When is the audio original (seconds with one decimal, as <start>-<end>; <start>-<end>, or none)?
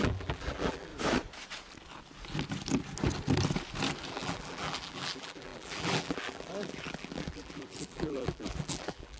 0.9-4.1